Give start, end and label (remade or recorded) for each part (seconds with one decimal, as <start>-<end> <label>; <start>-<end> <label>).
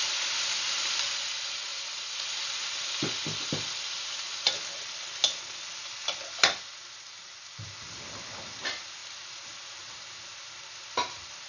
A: 0.0-1.7 recorded; 1.7-4.4 remade; 4.4-11.5 recorded